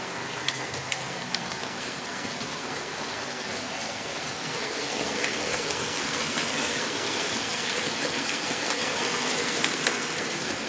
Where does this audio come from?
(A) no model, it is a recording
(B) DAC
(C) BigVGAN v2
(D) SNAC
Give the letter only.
D